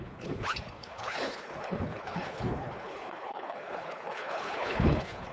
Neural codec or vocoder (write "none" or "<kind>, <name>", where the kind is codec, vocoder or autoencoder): codec, HILCodec